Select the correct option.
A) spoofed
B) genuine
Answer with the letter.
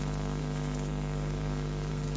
A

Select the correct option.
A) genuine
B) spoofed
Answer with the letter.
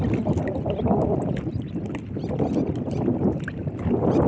A